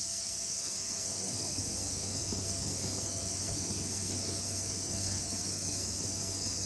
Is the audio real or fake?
fake